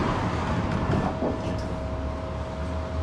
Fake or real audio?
real